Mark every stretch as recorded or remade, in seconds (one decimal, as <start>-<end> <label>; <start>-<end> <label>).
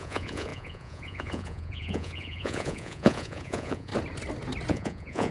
0.0-3.9 remade; 3.9-4.7 recorded; 4.7-5.3 remade